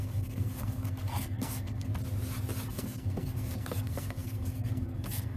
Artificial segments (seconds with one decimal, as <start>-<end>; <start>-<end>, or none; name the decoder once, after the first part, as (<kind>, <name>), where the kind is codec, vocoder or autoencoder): 0.0-1.9 (codec, SNAC); 2.7-5.4